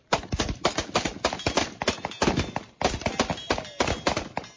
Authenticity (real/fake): real